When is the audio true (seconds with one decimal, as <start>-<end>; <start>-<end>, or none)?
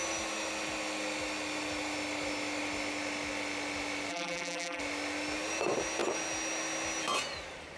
0.0-4.1; 4.8-7.8